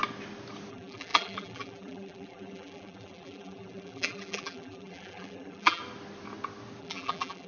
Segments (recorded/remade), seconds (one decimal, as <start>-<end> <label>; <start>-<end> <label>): 0.0-0.7 recorded; 0.7-5.8 remade; 5.8-6.8 recorded; 6.8-7.5 remade